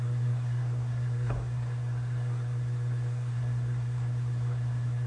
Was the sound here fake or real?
fake